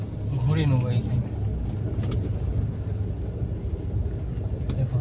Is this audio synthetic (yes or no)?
no